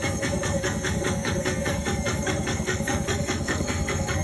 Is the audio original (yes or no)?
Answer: no